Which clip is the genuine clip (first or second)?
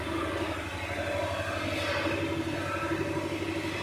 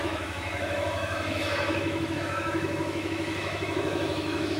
first